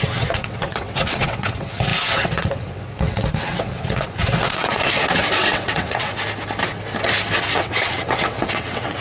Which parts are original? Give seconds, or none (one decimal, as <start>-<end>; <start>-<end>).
6.1-7.4